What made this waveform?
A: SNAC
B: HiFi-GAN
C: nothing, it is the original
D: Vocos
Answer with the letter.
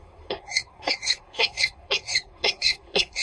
A